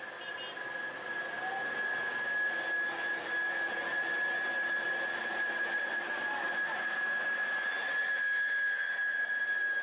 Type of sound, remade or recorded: recorded